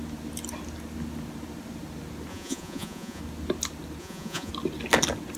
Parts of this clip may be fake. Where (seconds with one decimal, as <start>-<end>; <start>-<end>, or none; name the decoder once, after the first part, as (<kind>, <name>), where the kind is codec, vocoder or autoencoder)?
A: 2.3-3.2 (vocoder, Vocos); 4.0-4.5